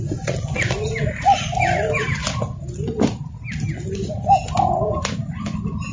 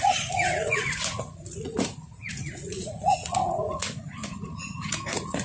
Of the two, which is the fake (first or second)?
second